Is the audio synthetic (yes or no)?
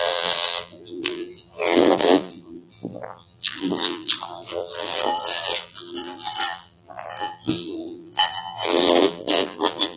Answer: yes